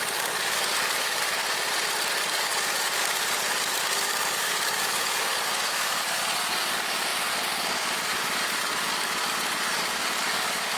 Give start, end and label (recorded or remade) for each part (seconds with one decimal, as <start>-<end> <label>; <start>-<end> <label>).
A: 0.0-1.4 remade; 1.4-2.1 recorded; 2.1-10.8 remade

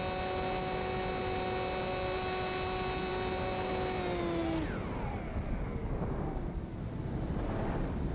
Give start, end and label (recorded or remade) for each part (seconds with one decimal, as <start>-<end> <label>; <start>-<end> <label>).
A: 0.0-8.1 recorded

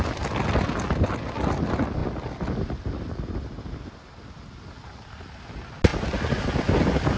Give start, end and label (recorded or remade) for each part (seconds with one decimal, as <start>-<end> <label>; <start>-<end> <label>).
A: 0.0-7.2 recorded

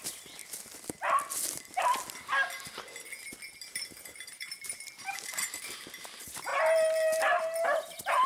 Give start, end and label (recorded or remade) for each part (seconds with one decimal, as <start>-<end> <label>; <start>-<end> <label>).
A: 0.0-0.4 remade; 0.4-3.6 recorded; 3.6-6.5 remade; 6.5-7.6 recorded; 7.6-8.3 remade

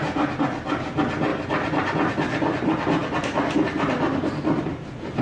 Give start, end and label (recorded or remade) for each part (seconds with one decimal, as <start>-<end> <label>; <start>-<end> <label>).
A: 0.0-1.3 recorded; 1.3-2.1 remade; 2.1-3.0 recorded; 3.0-4.8 remade; 4.8-5.2 recorded

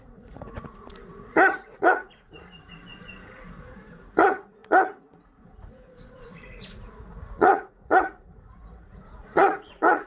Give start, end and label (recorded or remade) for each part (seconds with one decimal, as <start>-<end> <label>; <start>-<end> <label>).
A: 0.0-10.1 remade

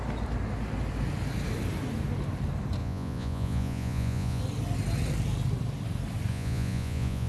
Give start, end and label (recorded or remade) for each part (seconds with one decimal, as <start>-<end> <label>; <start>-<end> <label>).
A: 0.0-2.8 recorded; 2.8-4.4 remade; 4.4-6.3 recorded; 6.3-7.3 remade

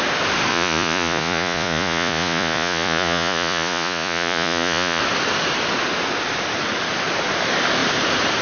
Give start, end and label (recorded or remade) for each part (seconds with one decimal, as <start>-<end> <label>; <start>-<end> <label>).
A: 0.0-0.5 recorded; 0.5-5.0 remade; 5.0-8.4 recorded